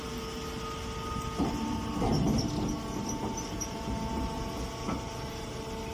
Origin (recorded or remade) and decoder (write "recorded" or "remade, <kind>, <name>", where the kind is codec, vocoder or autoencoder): recorded